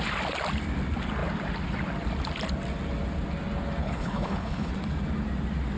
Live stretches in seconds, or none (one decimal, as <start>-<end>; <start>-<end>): 0.0-3.8; 4.7-5.8